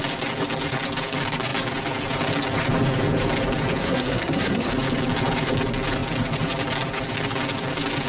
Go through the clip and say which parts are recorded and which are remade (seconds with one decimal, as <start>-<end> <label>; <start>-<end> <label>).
0.0-3.8 recorded; 3.8-4.7 remade; 4.7-8.1 recorded